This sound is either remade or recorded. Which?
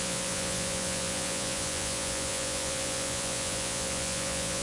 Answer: remade